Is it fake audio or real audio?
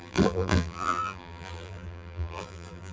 fake